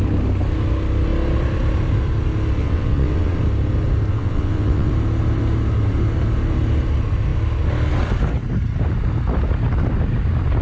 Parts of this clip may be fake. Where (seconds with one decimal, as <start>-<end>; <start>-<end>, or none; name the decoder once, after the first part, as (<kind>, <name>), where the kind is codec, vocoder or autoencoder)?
2.6-3.4 (vocoder, WaveNeXt); 4.1-4.9

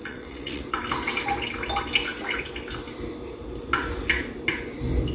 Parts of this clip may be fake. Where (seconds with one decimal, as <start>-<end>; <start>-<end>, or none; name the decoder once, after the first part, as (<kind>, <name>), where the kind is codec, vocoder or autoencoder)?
0.0-0.6 (vocoder, WaveNeXt)

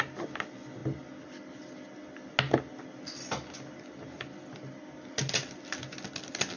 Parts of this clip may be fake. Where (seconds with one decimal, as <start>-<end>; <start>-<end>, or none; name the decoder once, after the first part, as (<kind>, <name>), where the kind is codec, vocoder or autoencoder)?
none

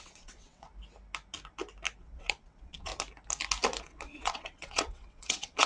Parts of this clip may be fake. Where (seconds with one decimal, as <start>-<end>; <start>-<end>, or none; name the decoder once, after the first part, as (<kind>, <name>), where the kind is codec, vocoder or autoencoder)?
0.0-0.7 (vocoder, WaveNeXt); 2.0-2.9; 3.8-5.7

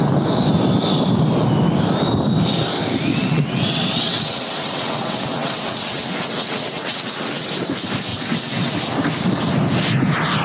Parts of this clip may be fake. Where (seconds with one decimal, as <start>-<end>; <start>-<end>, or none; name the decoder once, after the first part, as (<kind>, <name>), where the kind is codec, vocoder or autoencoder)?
3.1-7.5 (vocoder, WaveNeXt); 8.1-8.7